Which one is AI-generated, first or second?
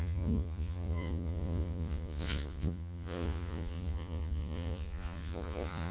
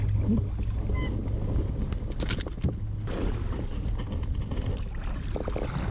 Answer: first